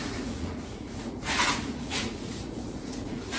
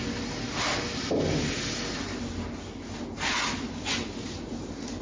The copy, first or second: first